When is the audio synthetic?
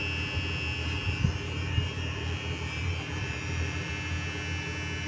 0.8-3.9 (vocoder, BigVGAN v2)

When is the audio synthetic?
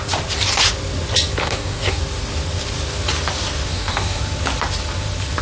1.4-2.0 (codec, DAC); 3.7-4.2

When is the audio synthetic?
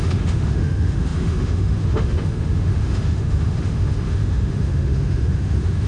0.0-5.9 (autoencoder, DAC-VAE)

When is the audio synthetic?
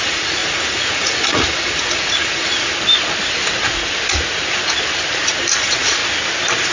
0.0-2.7 (vocoder, Vocos); 5.6-6.0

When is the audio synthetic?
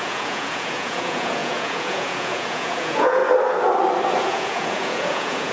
0.0-3.2 (vocoder, Vocos); 4.2-5.5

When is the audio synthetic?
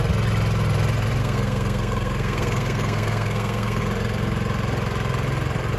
1.2-3.8 (codec, SNAC)